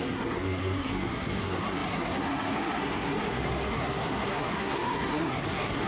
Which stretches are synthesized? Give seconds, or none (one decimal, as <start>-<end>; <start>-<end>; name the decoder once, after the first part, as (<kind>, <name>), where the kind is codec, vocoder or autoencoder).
0.0-5.9 (codec, SNAC)